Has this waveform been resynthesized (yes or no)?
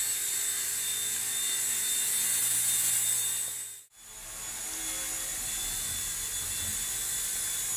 no